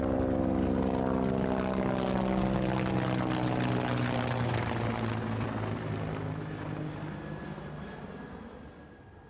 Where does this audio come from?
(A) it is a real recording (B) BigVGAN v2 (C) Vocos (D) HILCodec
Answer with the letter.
A